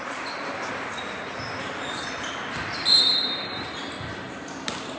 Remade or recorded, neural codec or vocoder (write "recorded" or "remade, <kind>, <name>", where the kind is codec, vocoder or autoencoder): recorded